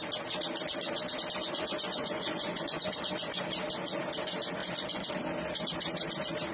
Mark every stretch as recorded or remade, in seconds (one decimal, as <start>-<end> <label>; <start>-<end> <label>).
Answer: 0.0-1.4 recorded; 1.4-3.4 remade; 3.4-4.6 recorded; 4.6-5.1 remade; 5.1-6.5 recorded